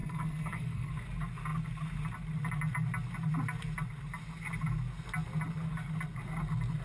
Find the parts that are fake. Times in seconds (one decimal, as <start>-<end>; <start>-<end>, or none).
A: 0.0-0.9